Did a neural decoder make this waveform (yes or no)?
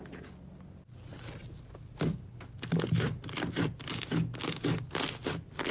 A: no